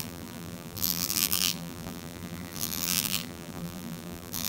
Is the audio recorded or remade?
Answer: remade